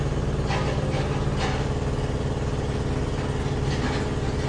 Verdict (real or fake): real